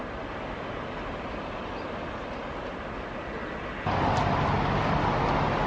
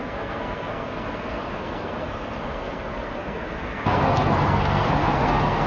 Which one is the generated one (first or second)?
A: second